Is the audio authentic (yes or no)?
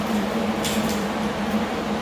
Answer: no